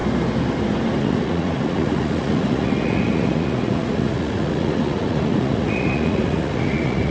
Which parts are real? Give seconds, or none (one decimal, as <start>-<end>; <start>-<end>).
0.0-1.0